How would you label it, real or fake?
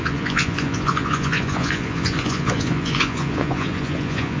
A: fake